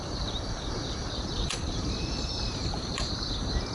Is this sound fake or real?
fake